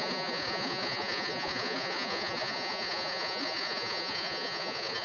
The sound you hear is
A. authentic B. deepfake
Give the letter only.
B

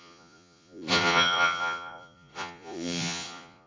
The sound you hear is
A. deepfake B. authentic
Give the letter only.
A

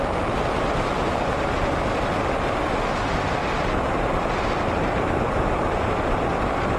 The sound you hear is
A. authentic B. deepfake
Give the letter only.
A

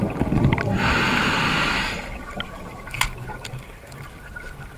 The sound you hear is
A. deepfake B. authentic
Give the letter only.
B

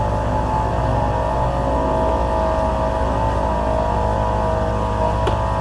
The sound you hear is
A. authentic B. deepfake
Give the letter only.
A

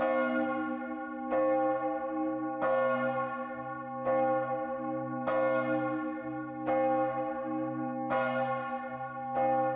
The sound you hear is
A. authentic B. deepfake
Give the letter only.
A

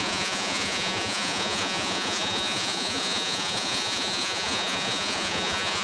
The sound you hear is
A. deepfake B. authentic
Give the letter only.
A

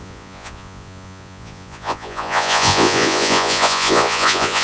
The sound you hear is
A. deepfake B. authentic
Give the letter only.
A